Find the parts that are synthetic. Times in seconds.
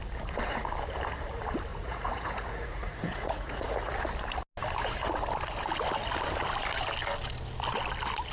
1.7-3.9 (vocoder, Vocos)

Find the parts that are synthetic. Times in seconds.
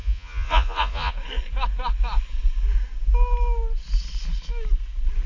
0.0-1.1 (vocoder, Vocos)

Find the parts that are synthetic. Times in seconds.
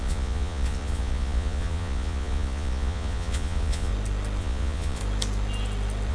0.0-3.9 (vocoder, Vocos); 4.4-5.0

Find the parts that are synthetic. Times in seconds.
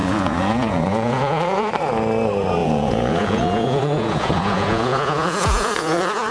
0.0-1.7 (vocoder, Vocos); 2.6-6.3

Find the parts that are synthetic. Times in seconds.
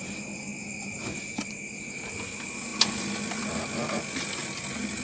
none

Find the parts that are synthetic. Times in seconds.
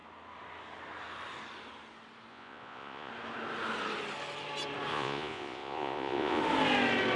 2.3-3.1 (vocoder, Vocos); 4.9-6.4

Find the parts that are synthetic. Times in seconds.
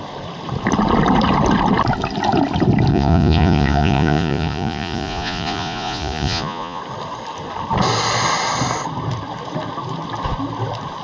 2.9-6.8 (vocoder, Vocos)